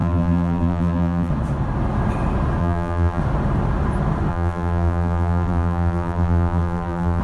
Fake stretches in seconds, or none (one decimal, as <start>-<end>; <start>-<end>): 0.0-1.3; 2.6-3.2; 4.3-7.2